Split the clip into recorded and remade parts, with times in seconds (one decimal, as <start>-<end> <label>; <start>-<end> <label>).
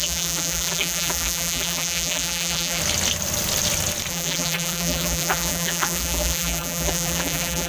0.0-2.8 remade; 2.8-4.1 recorded; 4.1-7.7 remade